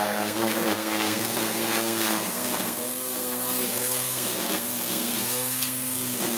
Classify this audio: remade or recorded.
remade